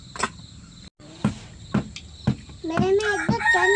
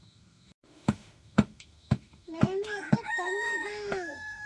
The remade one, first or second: second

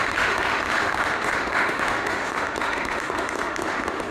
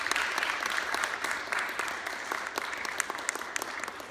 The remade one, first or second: first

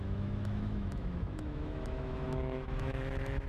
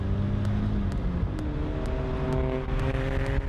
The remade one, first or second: first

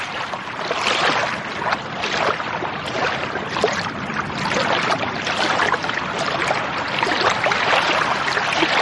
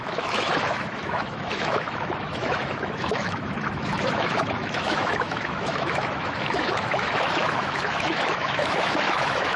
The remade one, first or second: second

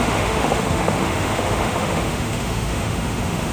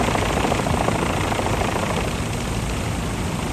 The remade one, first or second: first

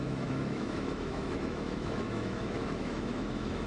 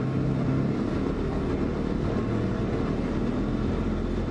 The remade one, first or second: first